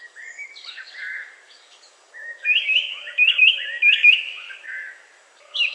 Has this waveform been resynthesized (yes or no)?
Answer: yes